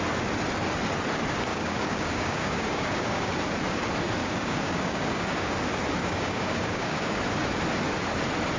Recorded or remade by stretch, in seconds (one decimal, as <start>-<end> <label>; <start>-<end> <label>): 0.0-1.5 recorded; 1.5-3.3 remade; 3.3-4.2 recorded; 4.2-5.5 remade; 5.5-6.0 recorded; 6.0-7.2 remade; 7.2-8.6 recorded